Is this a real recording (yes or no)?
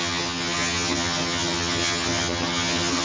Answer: no